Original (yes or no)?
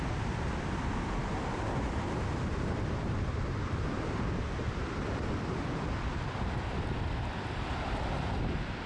yes